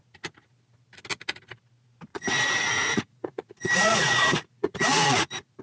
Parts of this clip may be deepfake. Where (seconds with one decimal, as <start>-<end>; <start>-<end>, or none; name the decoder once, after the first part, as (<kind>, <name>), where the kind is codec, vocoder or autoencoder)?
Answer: 2.1-5.6 (vocoder, Vocos)